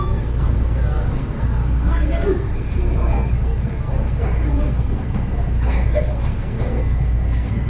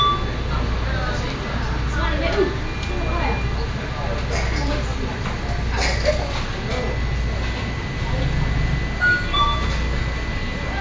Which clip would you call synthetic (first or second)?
first